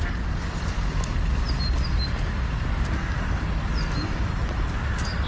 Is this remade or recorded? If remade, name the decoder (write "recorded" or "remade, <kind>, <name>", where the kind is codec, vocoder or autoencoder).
recorded